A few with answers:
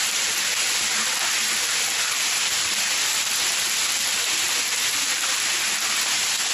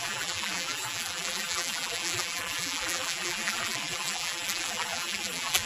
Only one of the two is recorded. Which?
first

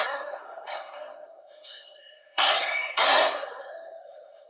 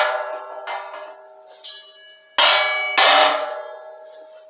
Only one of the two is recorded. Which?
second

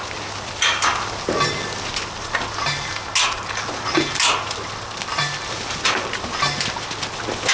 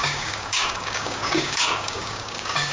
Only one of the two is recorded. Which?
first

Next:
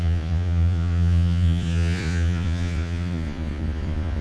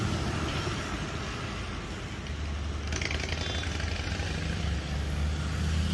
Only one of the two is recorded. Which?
second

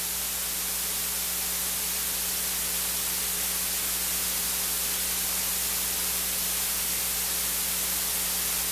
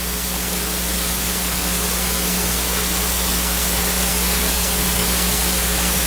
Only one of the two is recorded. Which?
first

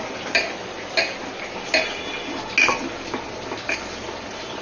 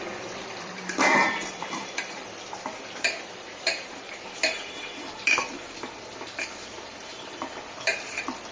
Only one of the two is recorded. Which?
first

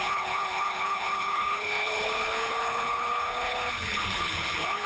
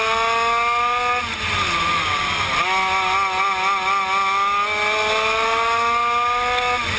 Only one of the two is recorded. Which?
second